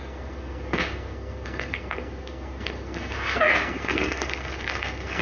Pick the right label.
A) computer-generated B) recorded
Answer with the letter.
A